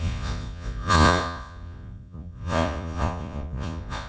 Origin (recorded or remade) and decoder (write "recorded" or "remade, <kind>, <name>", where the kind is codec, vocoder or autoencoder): remade, vocoder, Vocos